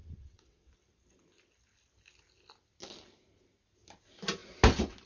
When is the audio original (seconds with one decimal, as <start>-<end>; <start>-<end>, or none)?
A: 0.7-5.1